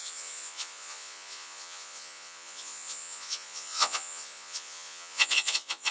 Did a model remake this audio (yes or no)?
yes